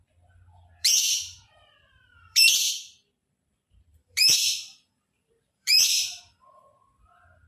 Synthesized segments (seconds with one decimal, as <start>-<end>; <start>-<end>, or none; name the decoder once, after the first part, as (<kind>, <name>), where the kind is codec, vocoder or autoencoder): 0.8-2.7 (vocoder, BigVGAN v2); 3.9-6.2